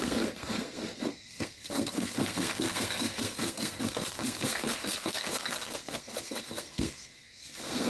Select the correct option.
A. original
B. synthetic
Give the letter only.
B